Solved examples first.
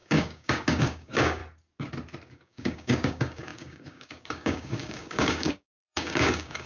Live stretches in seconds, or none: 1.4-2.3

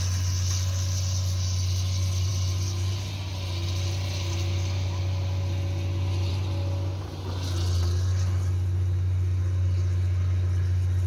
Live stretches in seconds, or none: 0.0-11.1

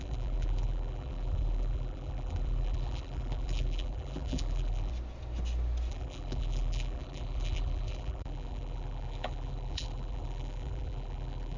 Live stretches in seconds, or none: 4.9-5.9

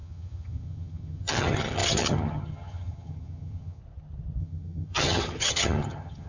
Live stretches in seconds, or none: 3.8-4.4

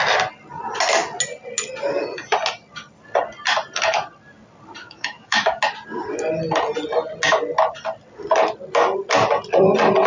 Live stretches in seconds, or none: 0.0-4.8; 5.6-10.1